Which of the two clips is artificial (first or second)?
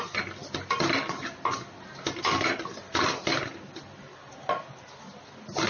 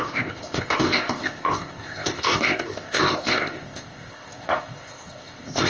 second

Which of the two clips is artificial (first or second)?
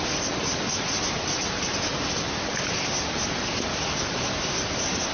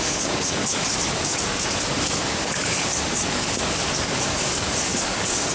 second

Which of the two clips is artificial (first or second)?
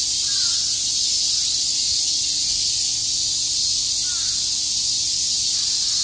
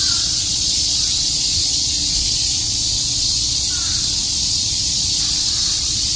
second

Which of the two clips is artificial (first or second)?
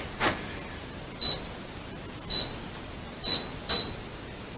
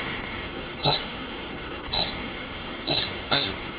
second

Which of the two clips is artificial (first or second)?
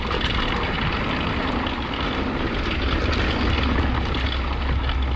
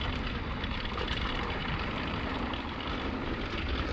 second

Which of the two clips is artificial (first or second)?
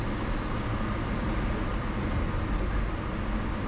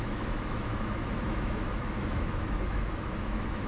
second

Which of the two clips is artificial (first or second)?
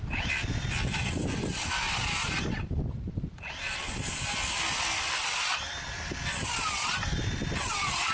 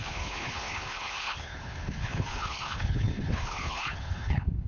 second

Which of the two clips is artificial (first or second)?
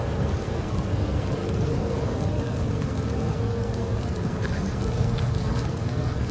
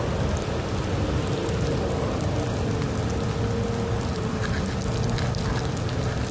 first